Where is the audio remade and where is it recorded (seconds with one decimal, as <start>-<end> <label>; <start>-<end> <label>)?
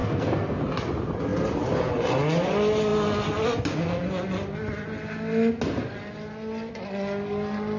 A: 0.0-0.6 remade; 0.6-7.8 recorded